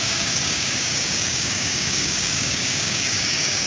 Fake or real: fake